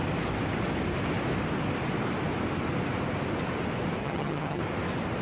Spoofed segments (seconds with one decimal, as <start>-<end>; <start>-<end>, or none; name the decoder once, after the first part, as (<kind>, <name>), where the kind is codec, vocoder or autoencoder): 4.0-4.6 (vocoder, HiFi-GAN)